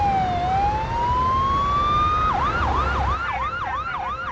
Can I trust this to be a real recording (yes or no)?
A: yes